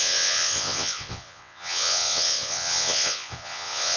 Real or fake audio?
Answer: fake